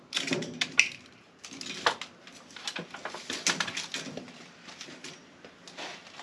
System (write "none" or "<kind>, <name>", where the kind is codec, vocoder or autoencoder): none